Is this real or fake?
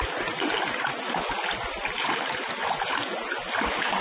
real